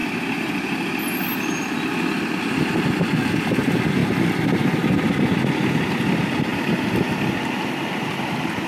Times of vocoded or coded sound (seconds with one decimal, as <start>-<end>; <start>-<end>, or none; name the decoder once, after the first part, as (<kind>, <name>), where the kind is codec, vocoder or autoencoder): 0.0-0.6 (vocoder, BigVGAN v2); 4.0-5.0; 6.5-7.3